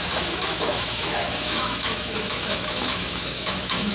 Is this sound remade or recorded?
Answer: remade